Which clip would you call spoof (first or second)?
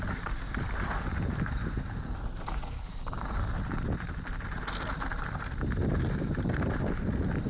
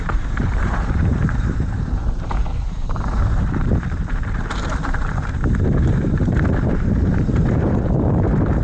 second